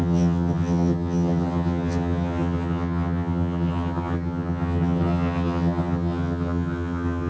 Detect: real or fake fake